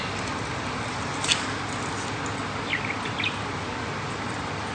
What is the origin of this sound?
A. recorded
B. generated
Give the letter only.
A